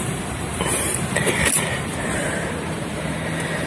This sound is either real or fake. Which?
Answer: fake